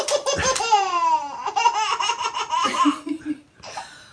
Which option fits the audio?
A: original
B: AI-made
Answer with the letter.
B